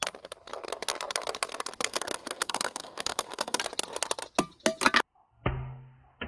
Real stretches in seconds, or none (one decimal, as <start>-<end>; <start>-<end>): 0.0-1.9; 3.6-6.3